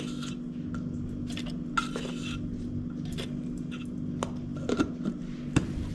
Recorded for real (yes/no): yes